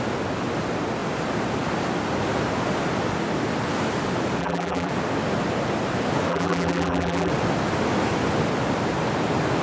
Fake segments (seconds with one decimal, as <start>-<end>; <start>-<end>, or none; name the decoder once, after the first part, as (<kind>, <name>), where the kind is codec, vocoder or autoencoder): 4.4-4.9 (vocoder, BigVGAN v2); 6.3-7.3